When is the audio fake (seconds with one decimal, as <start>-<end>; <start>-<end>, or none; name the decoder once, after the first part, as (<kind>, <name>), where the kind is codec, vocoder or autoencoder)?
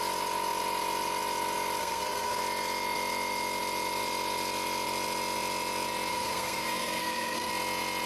1.8-2.4 (codec, SNAC); 6.1-7.5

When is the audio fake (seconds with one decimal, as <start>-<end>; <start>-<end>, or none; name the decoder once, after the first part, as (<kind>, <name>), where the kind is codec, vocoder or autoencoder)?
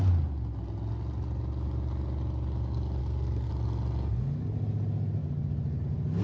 3.0-3.5 (codec, SNAC)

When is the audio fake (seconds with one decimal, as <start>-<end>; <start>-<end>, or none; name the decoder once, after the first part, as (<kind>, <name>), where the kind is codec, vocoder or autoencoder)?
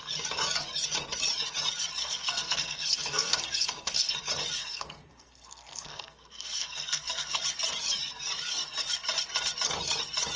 2.0-4.1 (codec, SNAC); 4.6-7.4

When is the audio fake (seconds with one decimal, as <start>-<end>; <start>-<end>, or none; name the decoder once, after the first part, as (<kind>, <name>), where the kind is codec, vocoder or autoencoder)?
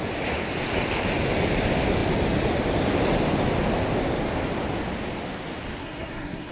5.8-6.5 (codec, SNAC)